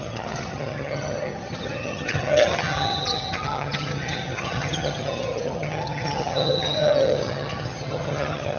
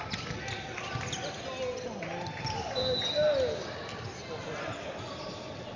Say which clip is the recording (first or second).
second